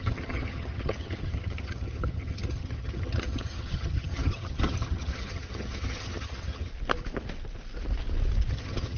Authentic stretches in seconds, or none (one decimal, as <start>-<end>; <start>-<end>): 6.7-8.5